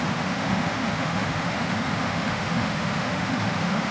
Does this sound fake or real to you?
fake